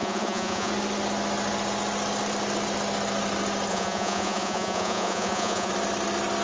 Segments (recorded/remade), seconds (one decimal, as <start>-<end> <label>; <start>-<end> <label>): 0.0-0.7 remade; 0.7-3.7 recorded; 3.7-5.7 remade; 5.7-6.4 recorded